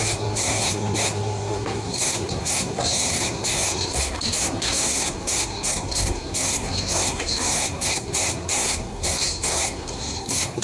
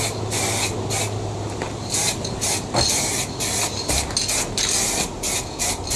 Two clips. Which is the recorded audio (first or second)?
second